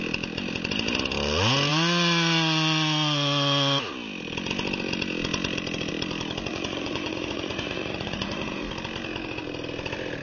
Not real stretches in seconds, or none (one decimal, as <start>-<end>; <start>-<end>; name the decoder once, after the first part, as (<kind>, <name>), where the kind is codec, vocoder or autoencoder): 6.5-8.7 (vocoder, Vocos)